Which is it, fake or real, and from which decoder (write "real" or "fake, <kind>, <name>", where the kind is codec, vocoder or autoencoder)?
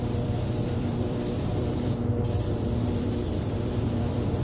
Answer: fake, vocoder, BigVGAN v2